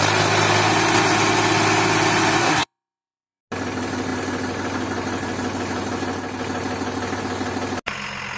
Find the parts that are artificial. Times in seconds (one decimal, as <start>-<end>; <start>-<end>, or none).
2.4-3.4

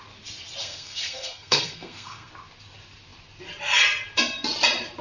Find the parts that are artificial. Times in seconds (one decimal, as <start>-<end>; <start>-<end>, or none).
0.6-2.3

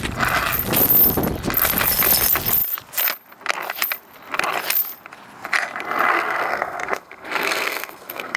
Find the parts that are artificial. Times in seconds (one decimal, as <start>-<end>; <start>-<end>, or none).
6.1-8.4

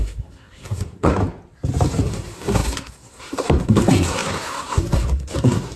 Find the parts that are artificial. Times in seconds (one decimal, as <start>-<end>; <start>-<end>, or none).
0.0-1.2; 2.0-5.8

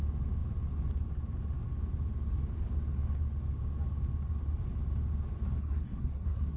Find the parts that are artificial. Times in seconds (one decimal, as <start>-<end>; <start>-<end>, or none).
5.6-6.6

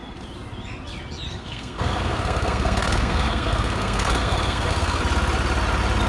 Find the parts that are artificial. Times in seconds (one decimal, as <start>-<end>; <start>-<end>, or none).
1.3-5.0

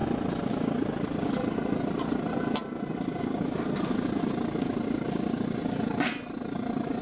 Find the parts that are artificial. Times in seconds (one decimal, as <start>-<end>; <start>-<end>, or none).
none

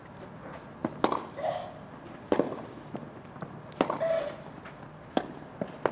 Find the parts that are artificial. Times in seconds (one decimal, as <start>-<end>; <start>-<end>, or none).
none